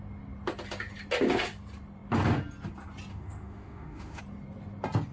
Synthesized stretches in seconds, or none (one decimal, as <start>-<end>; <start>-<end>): 3.1-4.2